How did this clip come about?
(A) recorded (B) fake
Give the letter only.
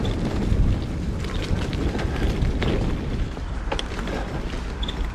A